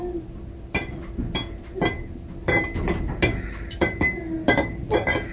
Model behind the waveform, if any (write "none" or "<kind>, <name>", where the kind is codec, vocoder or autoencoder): none